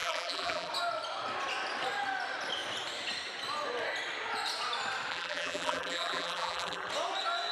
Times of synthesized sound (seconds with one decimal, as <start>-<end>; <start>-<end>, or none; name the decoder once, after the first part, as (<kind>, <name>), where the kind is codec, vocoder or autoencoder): 0.0-0.7 (vocoder, BigVGAN v2); 5.1-6.9